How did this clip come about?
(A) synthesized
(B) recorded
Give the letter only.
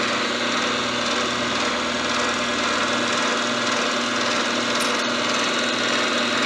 B